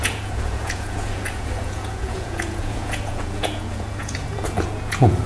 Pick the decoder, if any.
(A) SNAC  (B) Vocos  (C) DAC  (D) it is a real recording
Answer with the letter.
B